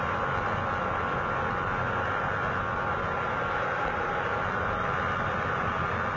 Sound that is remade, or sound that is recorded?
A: recorded